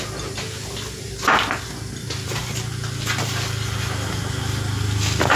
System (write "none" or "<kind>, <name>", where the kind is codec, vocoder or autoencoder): none